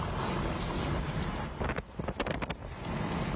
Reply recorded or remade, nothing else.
recorded